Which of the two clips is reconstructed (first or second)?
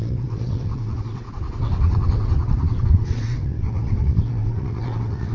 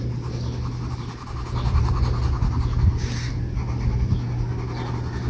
first